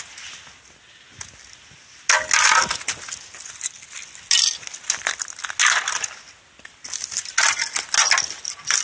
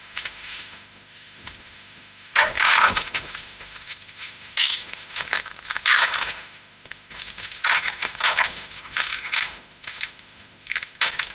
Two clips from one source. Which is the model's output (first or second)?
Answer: second